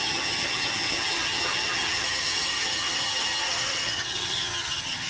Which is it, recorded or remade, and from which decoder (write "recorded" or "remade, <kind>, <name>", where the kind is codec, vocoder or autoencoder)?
remade, vocoder, HiFi-GAN